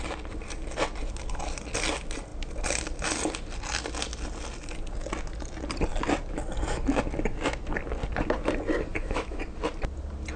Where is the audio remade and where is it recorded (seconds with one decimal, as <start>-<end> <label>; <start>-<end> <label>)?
0.0-8.9 recorded; 8.9-9.4 remade; 9.4-10.4 recorded